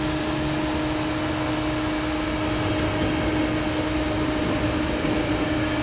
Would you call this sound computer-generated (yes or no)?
no